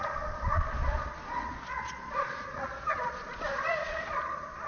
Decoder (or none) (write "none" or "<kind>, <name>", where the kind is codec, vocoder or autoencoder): vocoder, Vocos